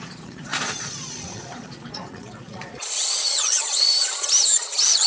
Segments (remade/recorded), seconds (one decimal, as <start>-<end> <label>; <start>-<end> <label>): 0.0-3.9 remade; 3.9-4.6 recorded; 4.6-5.1 remade